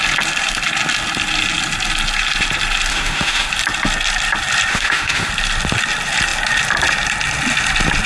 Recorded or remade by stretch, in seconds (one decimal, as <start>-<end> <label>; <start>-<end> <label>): 0.0-2.9 recorded; 2.9-3.5 remade; 3.5-4.7 recorded; 4.7-5.3 remade; 5.3-8.1 recorded